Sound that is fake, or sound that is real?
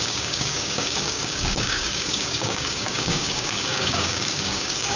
fake